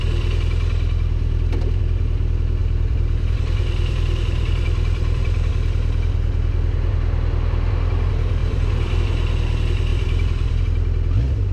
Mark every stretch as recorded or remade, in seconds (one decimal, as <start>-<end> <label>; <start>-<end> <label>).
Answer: 0.0-2.6 recorded; 2.6-5.5 remade; 5.5-8.4 recorded; 8.4-9.0 remade; 9.0-9.9 recorded; 9.9-10.6 remade; 10.6-11.5 recorded